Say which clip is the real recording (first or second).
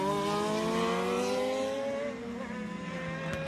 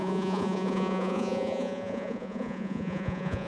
first